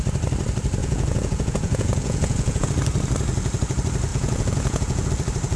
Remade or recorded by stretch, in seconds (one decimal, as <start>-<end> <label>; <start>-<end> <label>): 0.0-0.8 recorded; 0.8-2.7 remade; 2.7-4.1 recorded; 4.1-5.1 remade; 5.1-5.6 recorded